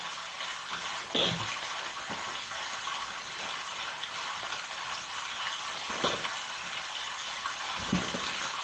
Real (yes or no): yes